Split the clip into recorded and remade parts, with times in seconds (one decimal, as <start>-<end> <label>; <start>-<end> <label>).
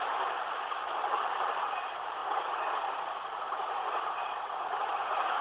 0.0-2.2 recorded; 2.2-5.4 remade